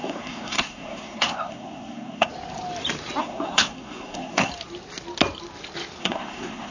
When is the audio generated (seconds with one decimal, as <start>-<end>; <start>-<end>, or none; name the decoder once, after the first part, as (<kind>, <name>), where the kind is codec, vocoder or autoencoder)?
0.0-2.3 (codec, SNAC); 3.2-4.5; 6.0-6.7